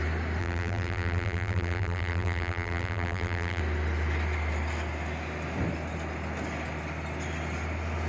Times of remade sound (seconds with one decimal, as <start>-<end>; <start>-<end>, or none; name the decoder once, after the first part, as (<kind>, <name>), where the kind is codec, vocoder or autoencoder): 0.4-3.6 (vocoder, BigVGAN v2)